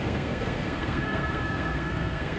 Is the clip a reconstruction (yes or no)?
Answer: yes